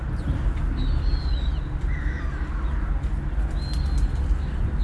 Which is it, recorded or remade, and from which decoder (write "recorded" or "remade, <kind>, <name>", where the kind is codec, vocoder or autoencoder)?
recorded